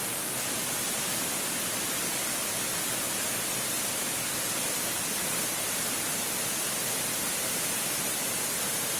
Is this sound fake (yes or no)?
no